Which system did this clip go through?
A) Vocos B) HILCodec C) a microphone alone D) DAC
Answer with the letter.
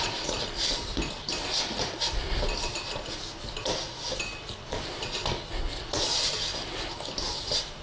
C